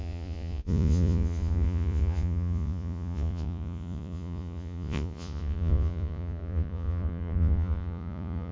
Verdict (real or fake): fake